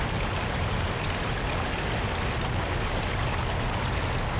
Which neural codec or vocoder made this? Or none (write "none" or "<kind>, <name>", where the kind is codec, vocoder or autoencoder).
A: none